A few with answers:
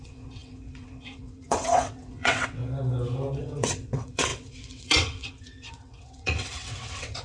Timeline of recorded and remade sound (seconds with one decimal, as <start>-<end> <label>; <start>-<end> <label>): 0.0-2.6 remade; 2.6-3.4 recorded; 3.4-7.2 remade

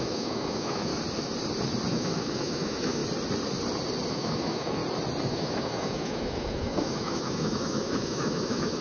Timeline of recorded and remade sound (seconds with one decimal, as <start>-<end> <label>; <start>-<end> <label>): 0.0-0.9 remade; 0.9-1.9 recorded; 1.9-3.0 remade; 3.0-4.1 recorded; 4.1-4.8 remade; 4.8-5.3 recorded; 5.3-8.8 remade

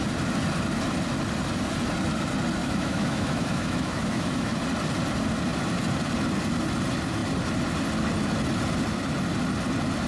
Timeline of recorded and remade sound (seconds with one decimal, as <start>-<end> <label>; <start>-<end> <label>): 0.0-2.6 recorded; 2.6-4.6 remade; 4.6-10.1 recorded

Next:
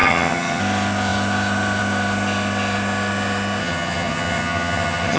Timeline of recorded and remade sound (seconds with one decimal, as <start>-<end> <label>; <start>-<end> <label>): 0.0-0.6 remade; 0.6-3.6 recorded; 3.6-5.2 remade

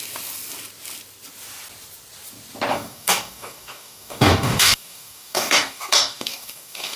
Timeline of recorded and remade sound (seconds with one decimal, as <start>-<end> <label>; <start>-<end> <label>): 0.0-2.7 recorded; 2.7-7.0 remade

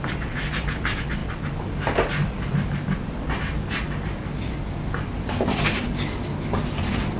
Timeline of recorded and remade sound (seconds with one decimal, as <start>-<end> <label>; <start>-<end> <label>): 0.0-7.2 recorded

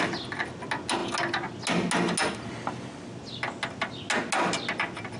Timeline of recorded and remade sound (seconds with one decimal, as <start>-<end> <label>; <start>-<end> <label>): 0.0-5.2 recorded

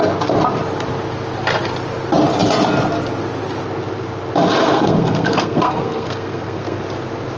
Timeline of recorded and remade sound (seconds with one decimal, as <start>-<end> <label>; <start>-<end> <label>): 0.0-4.6 recorded; 4.6-6.8 remade; 6.8-7.4 recorded